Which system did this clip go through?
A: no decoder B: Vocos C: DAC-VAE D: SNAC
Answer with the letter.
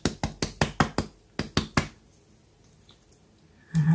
A